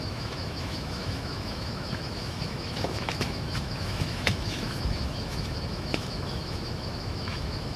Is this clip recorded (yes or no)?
no